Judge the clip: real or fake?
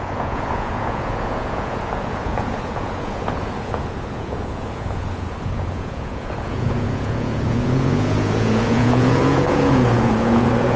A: fake